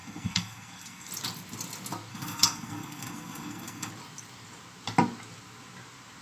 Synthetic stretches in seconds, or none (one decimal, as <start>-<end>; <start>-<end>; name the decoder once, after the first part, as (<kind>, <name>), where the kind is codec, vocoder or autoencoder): 0.0-1.1 (codec, SNAC); 2.1-3.9